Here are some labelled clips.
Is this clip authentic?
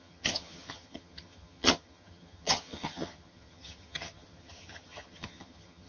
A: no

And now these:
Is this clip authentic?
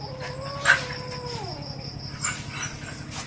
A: yes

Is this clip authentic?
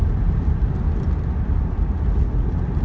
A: yes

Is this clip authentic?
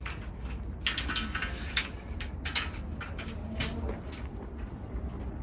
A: yes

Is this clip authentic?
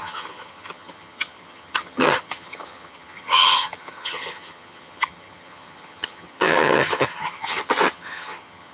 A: no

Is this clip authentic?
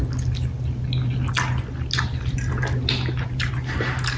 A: yes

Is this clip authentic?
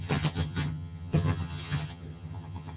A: no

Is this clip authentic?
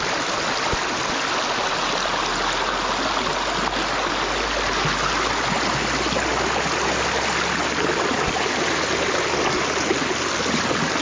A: yes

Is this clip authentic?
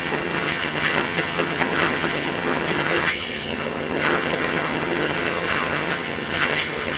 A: no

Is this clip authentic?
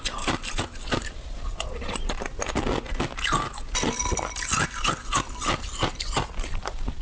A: yes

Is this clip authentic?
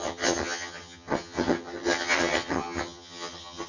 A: no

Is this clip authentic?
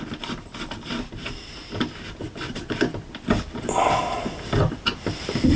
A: yes